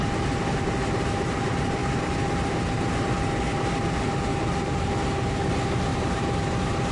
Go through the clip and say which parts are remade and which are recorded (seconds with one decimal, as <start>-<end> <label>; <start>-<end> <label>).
0.0-1.8 recorded; 1.8-3.1 remade; 3.1-4.3 recorded; 4.3-4.9 remade; 4.9-5.9 recorded; 5.9-6.4 remade; 6.4-6.9 recorded